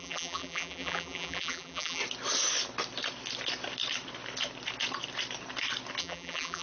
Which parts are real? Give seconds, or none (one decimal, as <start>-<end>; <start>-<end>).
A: 2.0-6.0